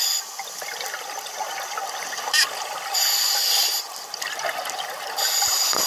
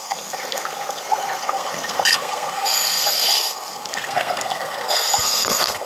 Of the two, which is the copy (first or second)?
second